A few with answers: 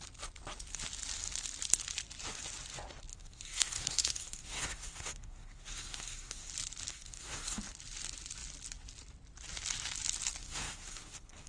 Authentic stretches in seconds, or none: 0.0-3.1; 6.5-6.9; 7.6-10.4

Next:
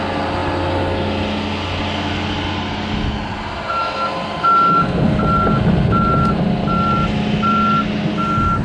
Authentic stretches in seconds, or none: 0.0-8.6

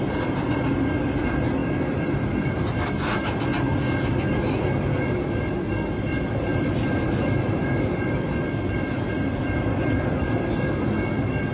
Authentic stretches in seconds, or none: 0.0-1.6; 2.9-6.5; 9.2-11.5

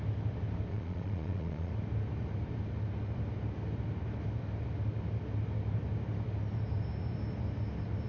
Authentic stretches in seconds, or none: 0.0-0.7; 1.7-8.1